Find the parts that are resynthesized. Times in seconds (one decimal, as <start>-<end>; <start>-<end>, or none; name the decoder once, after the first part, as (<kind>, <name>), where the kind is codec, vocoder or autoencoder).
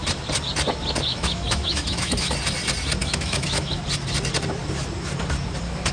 1.1-2.2 (autoencoder, DAC-VAE); 3.0-3.8